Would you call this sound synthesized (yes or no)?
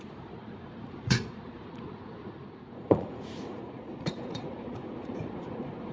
yes